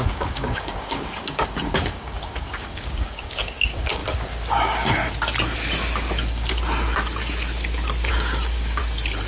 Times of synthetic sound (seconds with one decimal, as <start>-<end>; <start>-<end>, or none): 0.0-4.0; 4.6-5.0; 8.1-8.8